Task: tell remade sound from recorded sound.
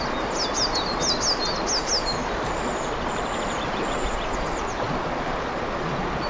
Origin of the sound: recorded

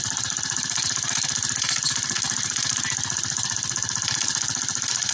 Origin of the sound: recorded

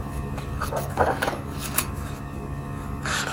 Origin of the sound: remade